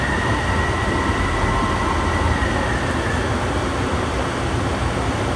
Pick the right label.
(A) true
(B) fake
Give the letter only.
A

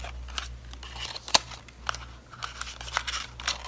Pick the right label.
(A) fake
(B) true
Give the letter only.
B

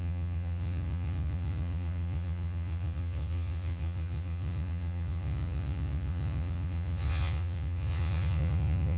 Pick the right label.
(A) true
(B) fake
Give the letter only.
B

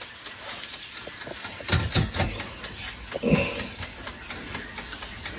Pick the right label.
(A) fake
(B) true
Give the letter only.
B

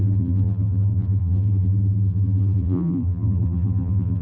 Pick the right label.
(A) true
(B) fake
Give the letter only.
B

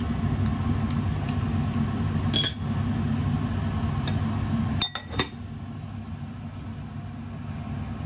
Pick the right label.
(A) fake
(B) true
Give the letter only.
B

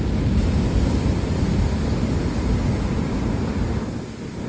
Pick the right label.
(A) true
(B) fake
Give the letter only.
A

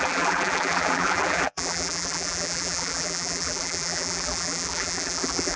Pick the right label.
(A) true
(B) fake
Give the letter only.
B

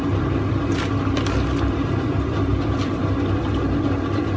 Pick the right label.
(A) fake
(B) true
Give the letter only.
A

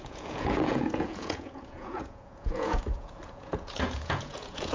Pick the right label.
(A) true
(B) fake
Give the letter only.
B